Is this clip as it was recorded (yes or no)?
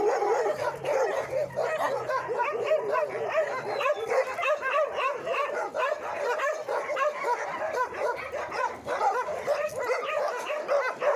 yes